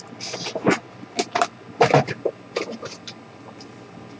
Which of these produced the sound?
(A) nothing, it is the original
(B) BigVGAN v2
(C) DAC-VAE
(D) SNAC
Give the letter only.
A